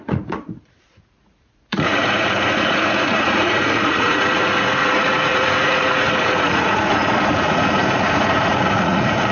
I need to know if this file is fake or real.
fake